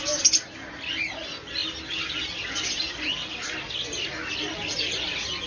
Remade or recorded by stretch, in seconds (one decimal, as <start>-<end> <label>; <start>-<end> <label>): 0.0-5.5 recorded